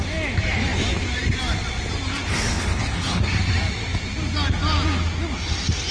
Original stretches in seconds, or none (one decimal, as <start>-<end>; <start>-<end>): 0.0-2.3; 3.2-5.9